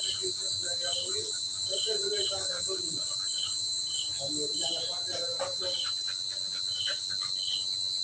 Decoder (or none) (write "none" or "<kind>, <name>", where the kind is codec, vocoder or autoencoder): none